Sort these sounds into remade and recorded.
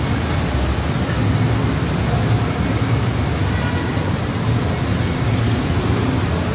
recorded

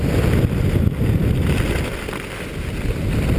recorded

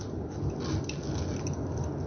recorded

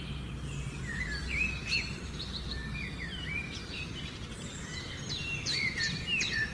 remade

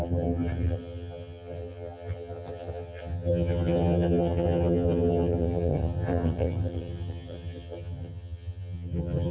remade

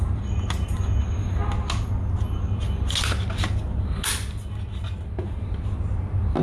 recorded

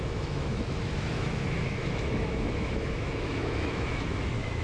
remade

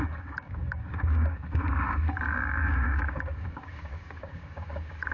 remade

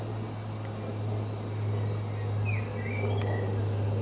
recorded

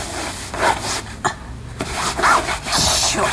recorded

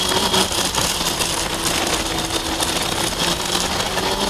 remade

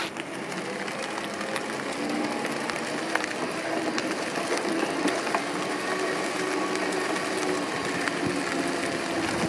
recorded